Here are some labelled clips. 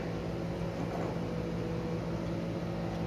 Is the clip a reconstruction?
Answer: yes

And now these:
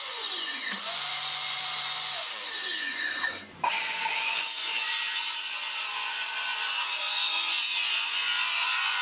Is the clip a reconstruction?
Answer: yes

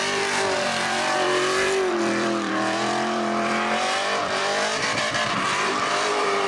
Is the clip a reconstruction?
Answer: yes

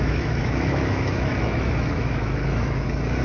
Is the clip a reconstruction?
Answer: yes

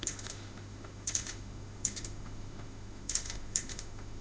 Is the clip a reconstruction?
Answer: yes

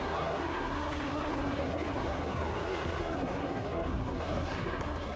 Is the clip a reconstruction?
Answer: yes